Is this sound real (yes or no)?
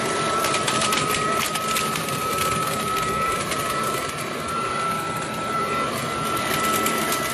no